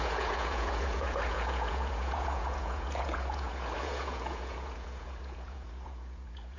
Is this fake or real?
fake